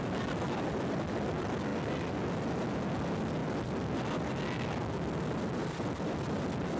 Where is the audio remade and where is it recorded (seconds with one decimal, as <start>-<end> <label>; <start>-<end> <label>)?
0.0-6.8 recorded